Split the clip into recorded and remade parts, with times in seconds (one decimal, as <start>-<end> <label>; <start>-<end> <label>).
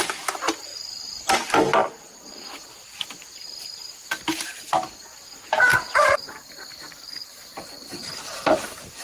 0.0-0.7 remade; 0.7-1.2 recorded; 1.2-1.8 remade; 1.8-3.0 recorded; 3.0-5.7 remade; 5.7-6.9 recorded; 6.9-9.0 remade